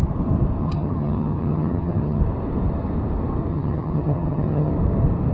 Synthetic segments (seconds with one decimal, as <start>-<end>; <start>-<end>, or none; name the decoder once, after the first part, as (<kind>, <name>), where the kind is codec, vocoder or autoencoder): 0.6-2.2 (vocoder, HiFi-GAN); 3.5-4.7